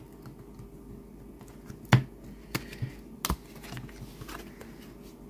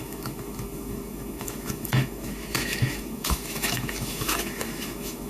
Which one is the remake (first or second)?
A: second